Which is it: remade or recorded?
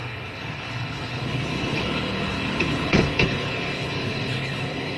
remade